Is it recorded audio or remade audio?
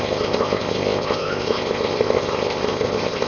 remade